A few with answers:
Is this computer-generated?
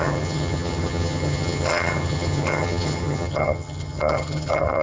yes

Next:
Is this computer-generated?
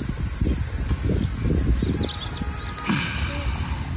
no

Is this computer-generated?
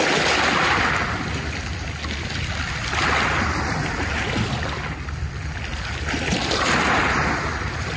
no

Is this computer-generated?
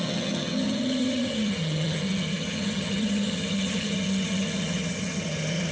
yes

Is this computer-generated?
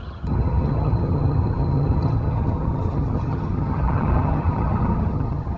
yes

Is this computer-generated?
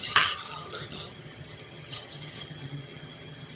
yes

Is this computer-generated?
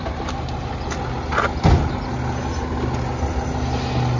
no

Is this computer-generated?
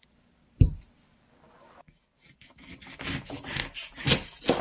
no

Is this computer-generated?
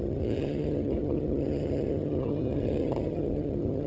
yes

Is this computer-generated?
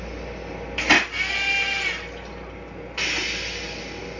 no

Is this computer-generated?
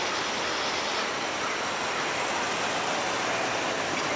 no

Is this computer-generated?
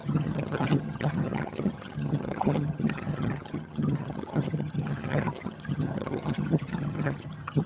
yes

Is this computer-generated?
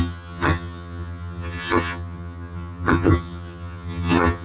yes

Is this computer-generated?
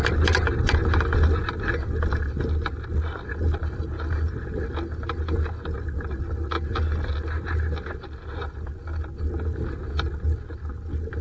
no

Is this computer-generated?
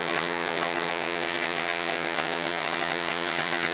yes